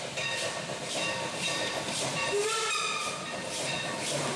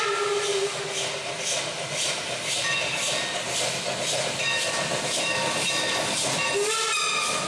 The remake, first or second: first